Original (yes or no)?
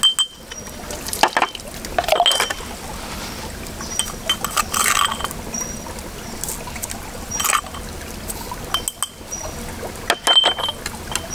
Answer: yes